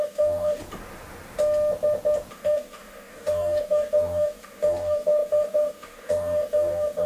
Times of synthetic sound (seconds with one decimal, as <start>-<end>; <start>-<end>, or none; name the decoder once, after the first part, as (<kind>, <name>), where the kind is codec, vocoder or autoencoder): 0.0-0.6 (codec, DAC); 2.3-7.1